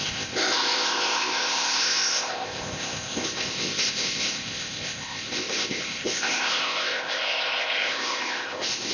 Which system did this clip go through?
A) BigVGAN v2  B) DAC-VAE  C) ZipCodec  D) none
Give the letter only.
C